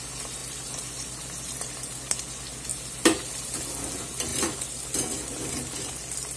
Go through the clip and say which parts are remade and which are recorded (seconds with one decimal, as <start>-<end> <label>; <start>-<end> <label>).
0.0-0.4 recorded; 0.4-2.0 remade; 2.0-2.7 recorded; 2.7-3.6 remade; 3.6-4.3 recorded; 4.3-5.5 remade; 5.5-6.4 recorded

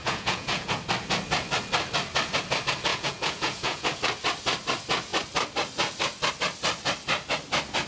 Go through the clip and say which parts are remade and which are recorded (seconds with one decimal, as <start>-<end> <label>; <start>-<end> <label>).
0.0-0.8 remade; 0.8-2.9 recorded; 2.9-4.0 remade; 4.0-7.9 recorded

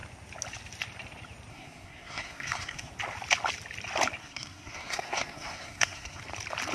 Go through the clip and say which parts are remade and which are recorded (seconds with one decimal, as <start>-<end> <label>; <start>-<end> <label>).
0.0-1.5 recorded; 1.5-2.9 remade; 2.9-4.2 recorded; 4.2-6.2 remade; 6.2-6.7 recorded

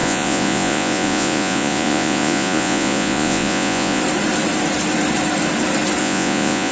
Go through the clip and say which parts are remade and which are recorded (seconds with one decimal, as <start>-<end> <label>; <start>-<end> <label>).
0.0-4.0 remade; 4.0-6.0 recorded; 6.0-6.7 remade

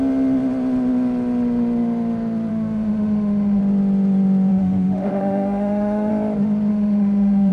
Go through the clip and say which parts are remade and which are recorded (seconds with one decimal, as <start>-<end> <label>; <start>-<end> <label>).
0.0-2.5 recorded; 2.5-3.6 remade; 3.6-4.5 recorded; 4.5-6.1 remade; 6.1-6.7 recorded; 6.7-7.5 remade